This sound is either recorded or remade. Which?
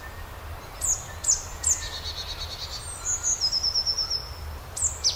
recorded